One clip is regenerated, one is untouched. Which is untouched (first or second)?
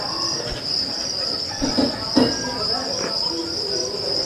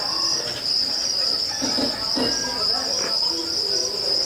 second